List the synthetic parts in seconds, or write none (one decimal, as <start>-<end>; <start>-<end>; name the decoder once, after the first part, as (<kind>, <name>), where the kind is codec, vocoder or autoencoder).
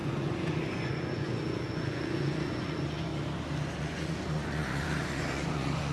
0.0-3.1 (vocoder, Vocos); 3.8-5.9